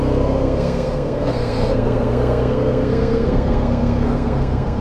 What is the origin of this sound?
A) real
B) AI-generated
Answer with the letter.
B